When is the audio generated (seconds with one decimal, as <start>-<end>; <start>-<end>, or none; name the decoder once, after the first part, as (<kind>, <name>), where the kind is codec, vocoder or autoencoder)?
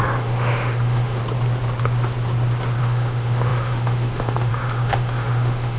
0.0-1.2 (autoencoder, DAC-VAE); 2.8-5.8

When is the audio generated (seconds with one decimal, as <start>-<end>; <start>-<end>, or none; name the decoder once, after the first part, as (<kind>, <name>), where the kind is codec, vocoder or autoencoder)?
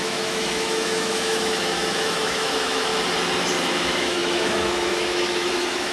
0.0-2.9 (autoencoder, DAC-VAE); 3.7-5.9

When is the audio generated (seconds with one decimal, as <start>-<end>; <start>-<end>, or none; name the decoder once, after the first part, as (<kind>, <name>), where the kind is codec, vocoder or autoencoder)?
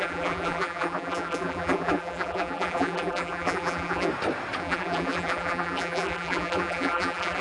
0.0-4.1 (vocoder, BigVGAN v2); 4.6-7.4